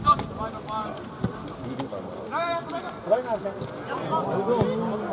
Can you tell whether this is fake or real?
real